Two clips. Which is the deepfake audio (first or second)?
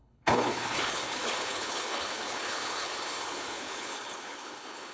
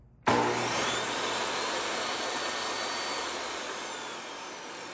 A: first